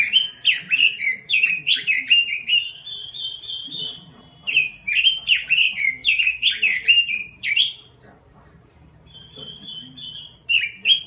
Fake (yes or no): yes